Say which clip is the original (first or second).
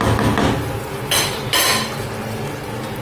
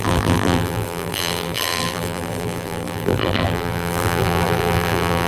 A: first